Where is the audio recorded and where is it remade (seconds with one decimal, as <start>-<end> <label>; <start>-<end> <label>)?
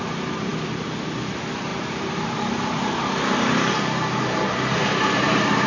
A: 0.0-1.7 recorded; 1.7-3.7 remade; 3.7-4.8 recorded; 4.8-5.7 remade